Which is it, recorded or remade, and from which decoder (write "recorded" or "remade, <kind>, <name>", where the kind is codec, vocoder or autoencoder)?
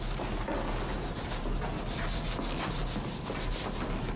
recorded